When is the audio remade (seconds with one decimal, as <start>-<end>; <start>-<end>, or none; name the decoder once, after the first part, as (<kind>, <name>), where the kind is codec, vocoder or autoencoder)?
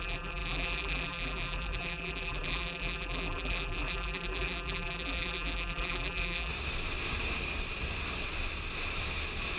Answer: 0.0-6.5 (vocoder, BigVGAN v2)